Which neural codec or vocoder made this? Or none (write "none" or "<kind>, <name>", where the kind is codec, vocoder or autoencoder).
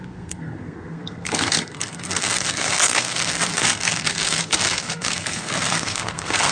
codec, SNAC